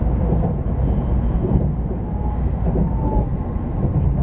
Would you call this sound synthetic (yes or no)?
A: no